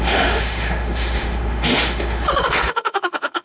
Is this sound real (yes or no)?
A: no